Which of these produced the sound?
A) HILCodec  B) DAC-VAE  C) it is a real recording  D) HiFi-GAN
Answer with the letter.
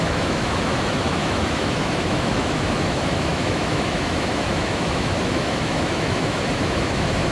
B